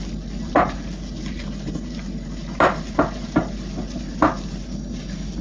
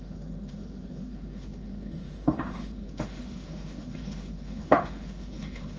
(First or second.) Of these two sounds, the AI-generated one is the second